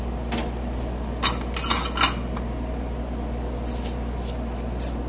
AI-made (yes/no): no